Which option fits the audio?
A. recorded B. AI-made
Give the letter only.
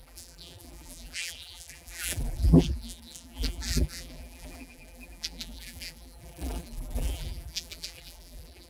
B